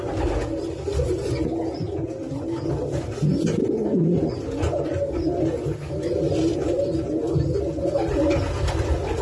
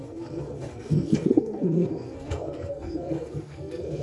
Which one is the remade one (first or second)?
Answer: second